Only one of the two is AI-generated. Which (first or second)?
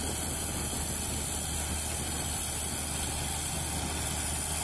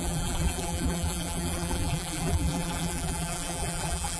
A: second